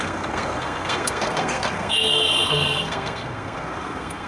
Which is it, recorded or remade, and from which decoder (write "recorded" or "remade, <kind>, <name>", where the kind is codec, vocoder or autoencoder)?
remade, codec, SNAC